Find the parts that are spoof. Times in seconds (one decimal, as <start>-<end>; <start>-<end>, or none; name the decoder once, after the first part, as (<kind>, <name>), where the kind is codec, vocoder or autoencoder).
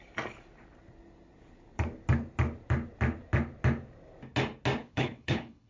4.8-5.7 (codec, HILCodec)